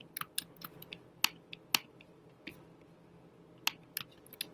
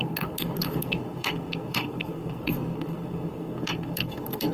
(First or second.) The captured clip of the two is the first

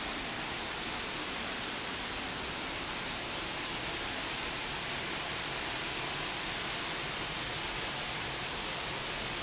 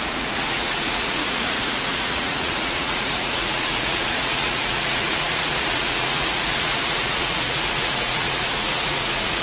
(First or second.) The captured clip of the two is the first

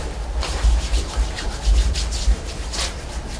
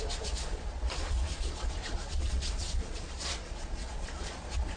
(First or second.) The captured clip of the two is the first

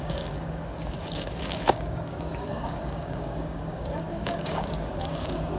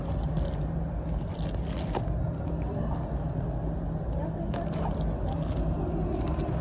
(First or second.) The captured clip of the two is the second